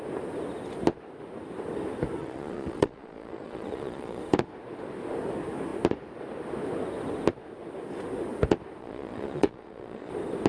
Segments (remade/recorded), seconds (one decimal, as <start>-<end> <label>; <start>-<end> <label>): 0.0-2.2 recorded; 2.2-4.2 remade; 4.2-8.8 recorded; 8.8-10.1 remade; 10.1-10.5 recorded